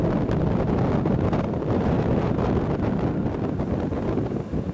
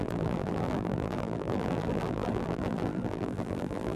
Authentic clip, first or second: first